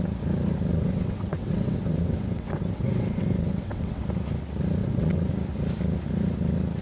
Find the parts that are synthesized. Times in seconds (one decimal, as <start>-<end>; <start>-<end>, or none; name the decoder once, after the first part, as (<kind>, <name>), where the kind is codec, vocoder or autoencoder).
0.7-4.0 (vocoder, WaveNeXt); 4.8-5.3